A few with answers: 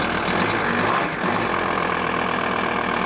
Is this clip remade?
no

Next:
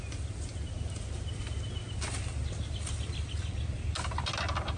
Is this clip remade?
no